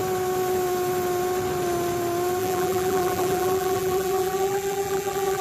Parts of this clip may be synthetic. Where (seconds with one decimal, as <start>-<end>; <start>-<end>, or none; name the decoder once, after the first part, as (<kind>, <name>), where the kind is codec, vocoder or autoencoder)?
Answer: 2.4-5.4 (vocoder, BigVGAN v2)